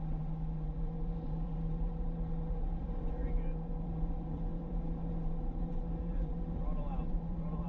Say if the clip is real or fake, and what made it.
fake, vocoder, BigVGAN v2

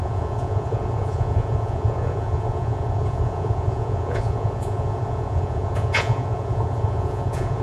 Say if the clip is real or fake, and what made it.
fake, vocoder, Vocos